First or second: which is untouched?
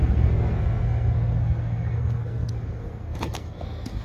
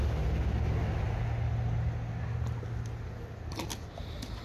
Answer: second